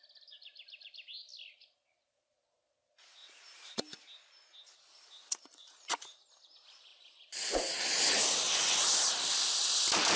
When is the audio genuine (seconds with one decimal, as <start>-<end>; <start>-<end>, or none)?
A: 0.0-3.2; 3.8-5.2; 6.0-10.2